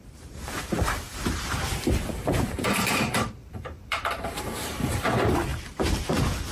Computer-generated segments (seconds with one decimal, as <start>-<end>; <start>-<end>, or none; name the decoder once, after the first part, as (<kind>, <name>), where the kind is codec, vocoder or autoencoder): 0.0-6.5 (vocoder, BigVGAN v2)